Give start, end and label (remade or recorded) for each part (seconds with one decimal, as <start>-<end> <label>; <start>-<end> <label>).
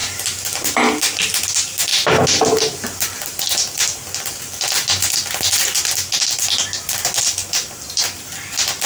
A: 0.0-7.4 recorded; 7.4-8.5 remade; 8.5-8.9 recorded